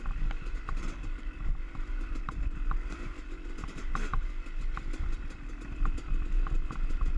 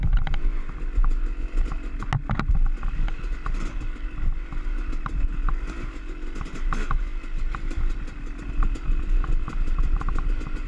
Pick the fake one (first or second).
first